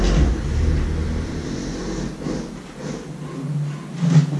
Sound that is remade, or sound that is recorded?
recorded